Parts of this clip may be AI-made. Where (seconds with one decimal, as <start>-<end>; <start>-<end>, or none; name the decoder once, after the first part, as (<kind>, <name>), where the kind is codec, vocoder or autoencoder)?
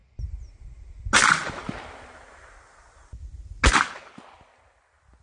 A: none